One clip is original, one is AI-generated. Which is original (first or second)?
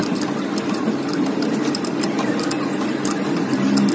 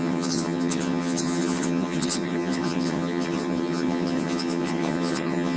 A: first